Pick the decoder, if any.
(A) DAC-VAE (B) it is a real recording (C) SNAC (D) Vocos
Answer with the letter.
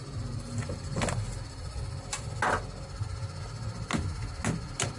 B